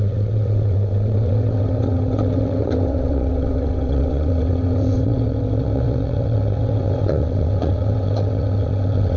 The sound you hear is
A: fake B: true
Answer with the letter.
A